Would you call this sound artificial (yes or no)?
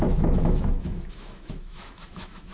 yes